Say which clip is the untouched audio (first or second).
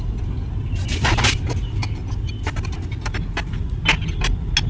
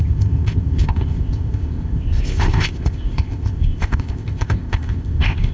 first